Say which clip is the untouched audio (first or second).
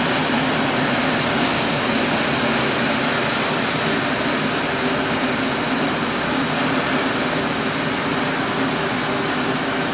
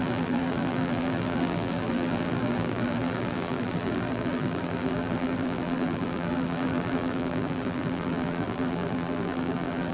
first